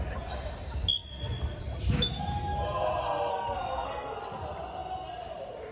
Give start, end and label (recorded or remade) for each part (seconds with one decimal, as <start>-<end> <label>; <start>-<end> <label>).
0.0-3.3 recorded; 3.3-4.2 remade; 4.2-5.7 recorded